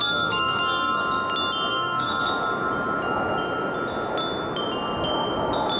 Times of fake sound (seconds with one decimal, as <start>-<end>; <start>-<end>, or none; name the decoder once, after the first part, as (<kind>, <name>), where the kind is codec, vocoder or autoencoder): 0.0-1.0 (codec, SNAC); 1.7-2.2